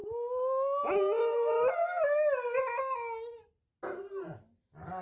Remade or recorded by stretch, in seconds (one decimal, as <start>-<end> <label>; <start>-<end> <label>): 0.0-5.0 recorded